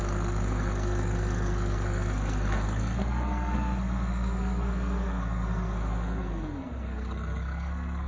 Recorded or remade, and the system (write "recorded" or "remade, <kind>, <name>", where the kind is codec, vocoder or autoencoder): remade, codec, SNAC